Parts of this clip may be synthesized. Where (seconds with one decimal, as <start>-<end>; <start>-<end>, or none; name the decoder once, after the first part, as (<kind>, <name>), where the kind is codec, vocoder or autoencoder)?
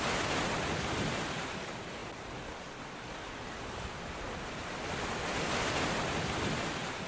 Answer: none